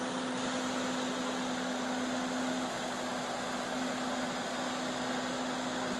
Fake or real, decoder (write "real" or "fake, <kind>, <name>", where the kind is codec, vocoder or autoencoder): real